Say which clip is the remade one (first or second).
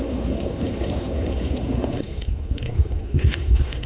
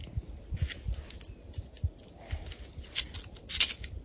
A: first